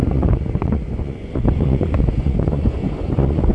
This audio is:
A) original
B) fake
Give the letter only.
B